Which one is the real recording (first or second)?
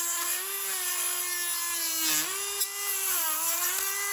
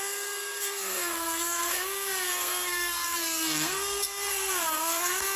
first